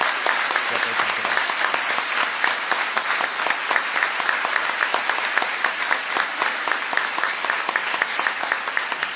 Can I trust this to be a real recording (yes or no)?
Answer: yes